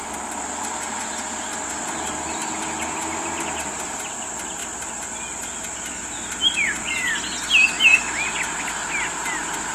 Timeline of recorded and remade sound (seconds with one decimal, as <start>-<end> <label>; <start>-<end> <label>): 0.0-9.7 recorded